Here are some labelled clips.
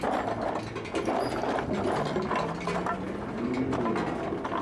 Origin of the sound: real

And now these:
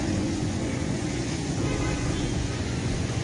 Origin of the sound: fake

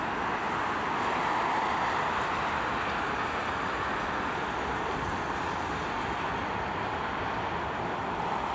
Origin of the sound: real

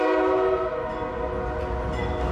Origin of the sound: real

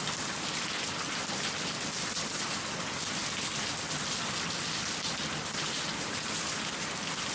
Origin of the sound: real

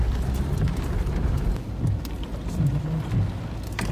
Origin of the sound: real